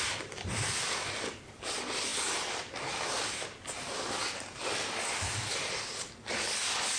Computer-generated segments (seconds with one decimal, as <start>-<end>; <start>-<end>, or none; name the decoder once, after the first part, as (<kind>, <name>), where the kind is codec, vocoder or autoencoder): none